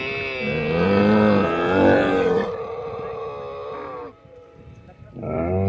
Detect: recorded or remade recorded